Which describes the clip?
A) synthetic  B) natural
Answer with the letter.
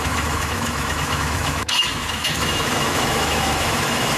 A